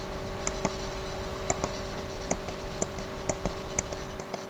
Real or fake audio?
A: real